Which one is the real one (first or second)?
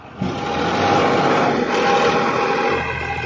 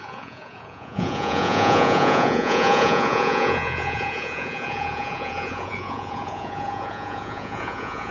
first